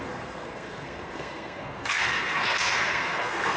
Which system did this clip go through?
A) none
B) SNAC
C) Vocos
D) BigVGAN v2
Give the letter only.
B